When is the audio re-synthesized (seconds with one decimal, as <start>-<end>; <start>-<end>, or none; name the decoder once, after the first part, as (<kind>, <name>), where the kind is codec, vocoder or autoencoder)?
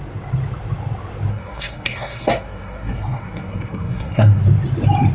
1.3-4.4 (codec, SNAC)